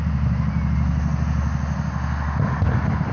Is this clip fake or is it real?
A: real